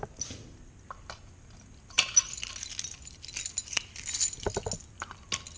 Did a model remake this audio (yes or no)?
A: no